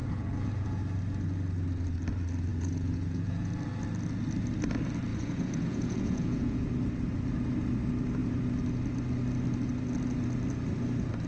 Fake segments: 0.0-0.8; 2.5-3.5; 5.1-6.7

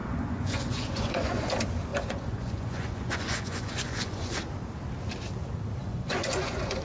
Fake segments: 0.0-1.5; 1.9-4.4; 5.8-6.8